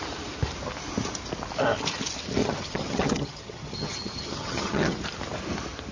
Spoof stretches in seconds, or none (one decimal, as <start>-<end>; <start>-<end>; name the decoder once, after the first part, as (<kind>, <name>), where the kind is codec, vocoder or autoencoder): 2.4-5.0 (vocoder, HiFi-GAN)